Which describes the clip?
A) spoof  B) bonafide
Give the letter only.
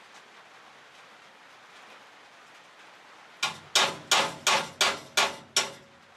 B